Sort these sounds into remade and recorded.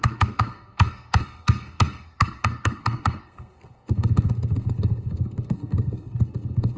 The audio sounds remade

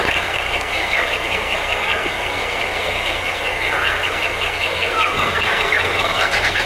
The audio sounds remade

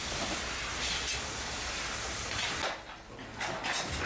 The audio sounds recorded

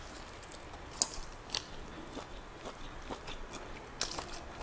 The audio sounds recorded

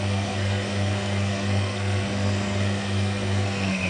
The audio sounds remade